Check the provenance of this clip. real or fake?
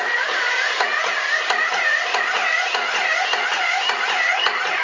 real